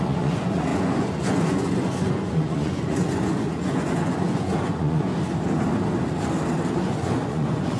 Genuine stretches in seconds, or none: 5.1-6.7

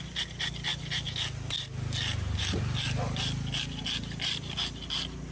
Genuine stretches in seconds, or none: 0.0-5.3

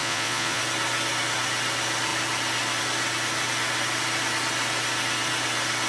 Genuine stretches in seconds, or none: 0.6-5.9